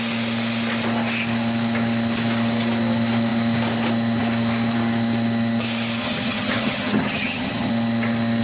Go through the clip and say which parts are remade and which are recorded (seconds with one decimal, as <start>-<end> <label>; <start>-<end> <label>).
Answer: 0.0-6.0 recorded; 6.0-7.7 remade; 7.7-8.4 recorded